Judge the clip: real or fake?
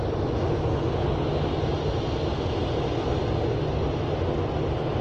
real